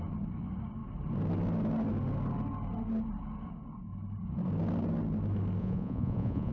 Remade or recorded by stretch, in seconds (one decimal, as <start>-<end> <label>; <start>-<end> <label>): 0.0-5.6 recorded; 5.6-6.5 remade